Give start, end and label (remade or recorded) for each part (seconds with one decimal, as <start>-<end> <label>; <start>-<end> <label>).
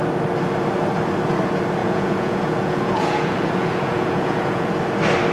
0.0-1.8 recorded; 1.8-4.7 remade; 4.7-5.3 recorded